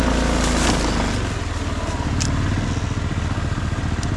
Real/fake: real